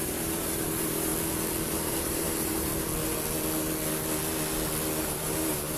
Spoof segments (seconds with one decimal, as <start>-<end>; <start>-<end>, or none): 0.0-1.1; 1.7-2.7; 5.0-5.8